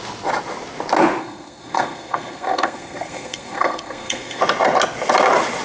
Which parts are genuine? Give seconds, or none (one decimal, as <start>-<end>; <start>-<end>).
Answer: 0.0-1.2; 4.4-5.6